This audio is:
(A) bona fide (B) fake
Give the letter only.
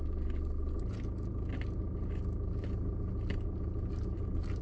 A